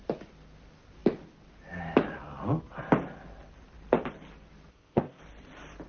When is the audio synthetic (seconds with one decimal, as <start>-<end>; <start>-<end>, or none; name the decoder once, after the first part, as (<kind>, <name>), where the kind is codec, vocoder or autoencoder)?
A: 4.7-5.2 (codec, ZipCodec)

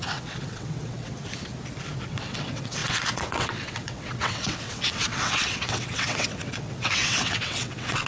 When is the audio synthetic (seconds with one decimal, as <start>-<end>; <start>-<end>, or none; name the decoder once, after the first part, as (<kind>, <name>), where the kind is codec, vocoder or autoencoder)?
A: 0.0-1.1 (vocoder, WaveNeXt); 2.1-8.1